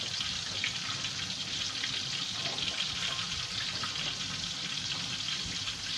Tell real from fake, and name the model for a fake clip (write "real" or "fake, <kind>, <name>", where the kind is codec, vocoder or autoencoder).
real